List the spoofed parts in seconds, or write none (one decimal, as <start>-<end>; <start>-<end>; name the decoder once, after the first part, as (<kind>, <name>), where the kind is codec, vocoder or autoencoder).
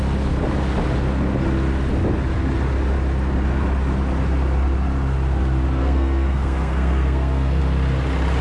5.8-7.6 (codec, SNAC)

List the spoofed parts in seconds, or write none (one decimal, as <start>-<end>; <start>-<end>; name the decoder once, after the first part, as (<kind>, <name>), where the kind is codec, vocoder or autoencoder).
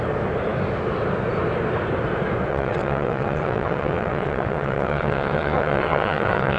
2.5-6.6 (vocoder, WaveNeXt)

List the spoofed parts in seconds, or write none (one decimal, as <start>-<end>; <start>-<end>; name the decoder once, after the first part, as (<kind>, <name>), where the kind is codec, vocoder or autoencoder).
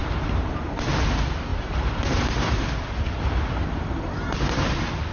0.0-0.9 (vocoder, BigVGAN v2); 1.5-4.6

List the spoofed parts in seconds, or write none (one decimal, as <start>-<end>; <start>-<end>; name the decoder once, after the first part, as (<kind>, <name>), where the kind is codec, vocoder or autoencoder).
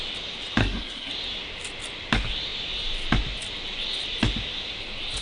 0.6-1.1 (codec, SNAC)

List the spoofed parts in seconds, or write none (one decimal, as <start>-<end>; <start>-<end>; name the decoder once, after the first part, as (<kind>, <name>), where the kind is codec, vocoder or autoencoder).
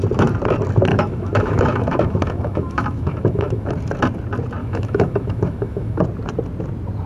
0.9-3.7 (autoencoder, DAC-VAE); 4.6-6.0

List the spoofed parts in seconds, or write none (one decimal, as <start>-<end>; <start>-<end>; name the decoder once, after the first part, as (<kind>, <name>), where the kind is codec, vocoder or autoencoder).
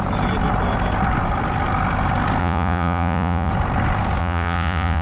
2.4-3.5 (vocoder, Vocos); 4.2-5.0